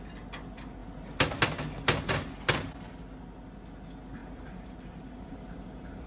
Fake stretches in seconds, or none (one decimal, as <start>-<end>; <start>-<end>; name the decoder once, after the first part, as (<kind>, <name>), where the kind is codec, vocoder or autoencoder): 4.2-6.1 (vocoder, BigVGAN v2)